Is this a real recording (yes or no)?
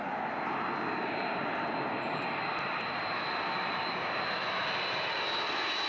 yes